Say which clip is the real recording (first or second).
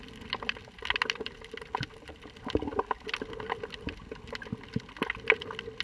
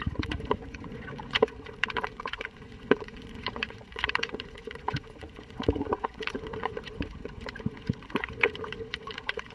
first